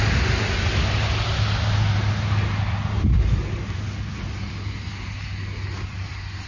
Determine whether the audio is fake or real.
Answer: real